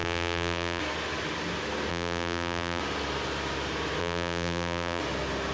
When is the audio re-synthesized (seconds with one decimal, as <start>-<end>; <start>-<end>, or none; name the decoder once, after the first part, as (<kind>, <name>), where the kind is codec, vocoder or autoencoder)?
0.0-0.8 (vocoder, BigVGAN v2); 1.9-2.8; 4.0-5.0